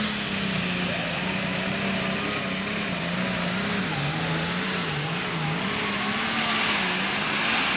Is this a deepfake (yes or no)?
no